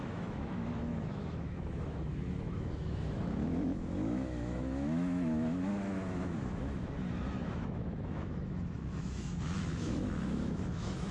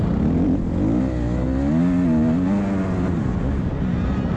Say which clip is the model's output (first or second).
first